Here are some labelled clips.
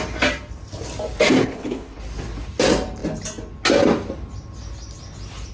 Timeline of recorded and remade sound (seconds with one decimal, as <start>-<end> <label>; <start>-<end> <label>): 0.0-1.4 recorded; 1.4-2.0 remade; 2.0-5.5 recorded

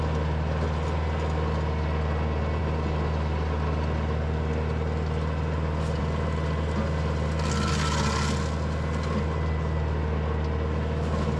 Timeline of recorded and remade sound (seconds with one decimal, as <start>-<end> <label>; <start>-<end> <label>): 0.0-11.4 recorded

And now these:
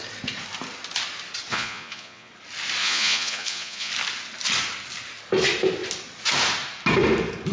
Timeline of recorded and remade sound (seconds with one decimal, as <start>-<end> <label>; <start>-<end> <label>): 0.0-1.5 recorded; 1.5-2.3 remade; 2.3-2.8 recorded; 2.8-3.9 remade; 3.9-7.5 recorded

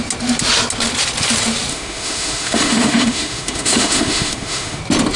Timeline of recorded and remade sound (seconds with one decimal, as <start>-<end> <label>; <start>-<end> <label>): 0.0-1.7 recorded; 1.7-4.8 remade; 4.8-5.2 recorded

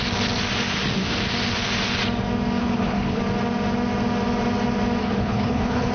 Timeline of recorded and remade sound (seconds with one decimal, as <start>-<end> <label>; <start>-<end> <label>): 0.0-2.6 recorded; 2.6-3.2 remade; 3.2-5.0 recorded; 5.0-5.9 remade

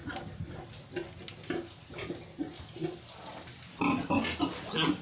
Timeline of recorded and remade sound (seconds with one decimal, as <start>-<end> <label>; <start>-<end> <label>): 0.0-5.0 recorded

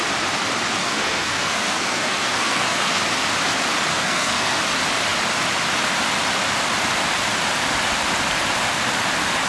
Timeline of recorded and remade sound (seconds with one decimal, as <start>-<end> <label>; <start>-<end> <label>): 0.0-0.8 recorded; 0.8-3.0 remade; 3.0-3.9 recorded; 3.9-4.6 remade; 4.6-9.5 recorded

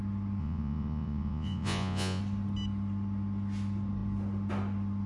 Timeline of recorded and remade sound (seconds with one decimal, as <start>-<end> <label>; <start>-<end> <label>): 0.0-0.4 recorded; 0.4-2.2 remade; 2.2-5.1 recorded